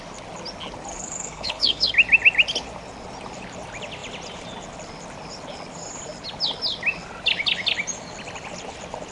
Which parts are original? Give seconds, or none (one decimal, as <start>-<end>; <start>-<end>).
0.0-0.9; 1.9-9.1